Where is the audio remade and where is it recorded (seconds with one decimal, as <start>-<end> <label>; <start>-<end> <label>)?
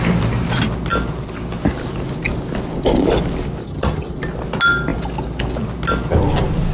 0.0-3.6 recorded; 3.6-4.2 remade; 4.2-6.7 recorded